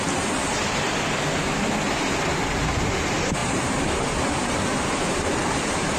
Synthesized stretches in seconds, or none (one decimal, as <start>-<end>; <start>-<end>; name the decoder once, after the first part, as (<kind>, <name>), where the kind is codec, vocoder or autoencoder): 3.4-6.0 (vocoder, BigVGAN v2)